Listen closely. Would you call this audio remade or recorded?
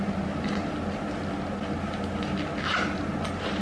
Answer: recorded